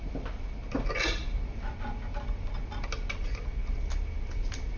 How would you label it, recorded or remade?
recorded